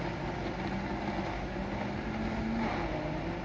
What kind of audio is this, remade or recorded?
recorded